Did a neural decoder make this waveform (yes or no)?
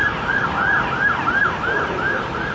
no